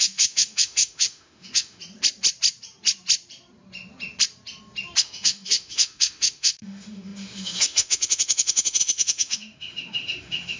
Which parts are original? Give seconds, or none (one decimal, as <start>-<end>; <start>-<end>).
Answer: 1.8-5.0